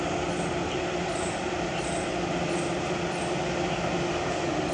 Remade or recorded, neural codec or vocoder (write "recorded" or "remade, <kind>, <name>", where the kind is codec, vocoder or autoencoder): recorded